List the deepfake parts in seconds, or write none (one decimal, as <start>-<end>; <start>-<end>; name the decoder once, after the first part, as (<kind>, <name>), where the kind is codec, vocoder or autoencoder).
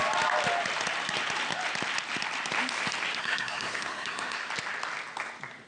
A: 3.2-4.5 (codec, SNAC)